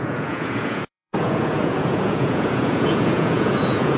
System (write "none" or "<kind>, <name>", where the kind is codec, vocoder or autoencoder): vocoder, Vocos